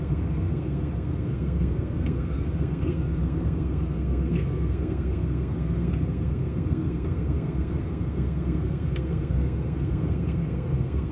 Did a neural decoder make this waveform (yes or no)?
yes